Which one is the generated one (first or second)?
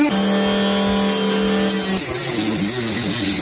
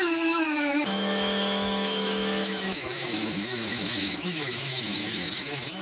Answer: second